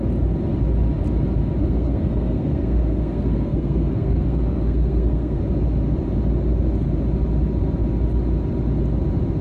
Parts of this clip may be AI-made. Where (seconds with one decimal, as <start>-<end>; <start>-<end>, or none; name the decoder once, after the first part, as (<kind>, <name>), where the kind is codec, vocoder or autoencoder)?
1.6-5.4 (codec, SNAC)